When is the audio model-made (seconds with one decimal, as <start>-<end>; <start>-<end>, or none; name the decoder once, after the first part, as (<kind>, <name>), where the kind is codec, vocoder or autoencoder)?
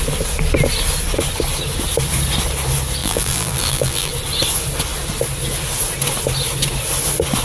3.0-4.1 (vocoder, BigVGAN v2)